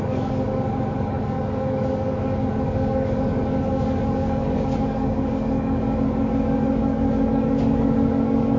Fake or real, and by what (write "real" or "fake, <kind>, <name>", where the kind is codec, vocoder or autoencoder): fake, codec, DAC